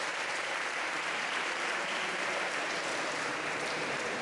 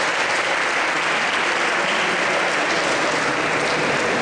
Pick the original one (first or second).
second